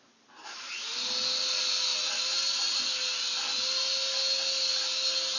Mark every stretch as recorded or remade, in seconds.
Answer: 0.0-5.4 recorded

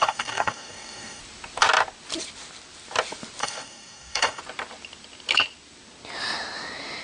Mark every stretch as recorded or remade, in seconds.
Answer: 0.0-1.2 remade; 1.2-3.4 recorded; 3.4-4.4 remade; 4.4-7.0 recorded

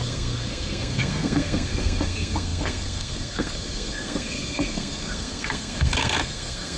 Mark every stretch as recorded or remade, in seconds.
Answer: 0.0-6.8 remade

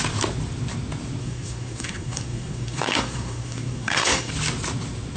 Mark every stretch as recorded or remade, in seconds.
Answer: 0.0-1.2 recorded; 1.2-4.3 remade; 4.3-5.2 recorded

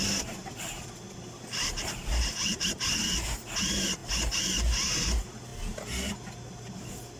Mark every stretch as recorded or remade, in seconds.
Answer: 0.0-0.4 recorded; 0.4-1.0 remade; 1.0-7.2 recorded